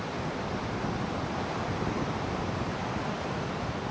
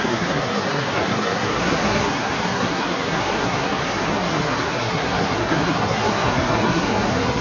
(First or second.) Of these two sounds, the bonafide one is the first